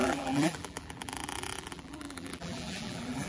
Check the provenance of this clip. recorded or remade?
remade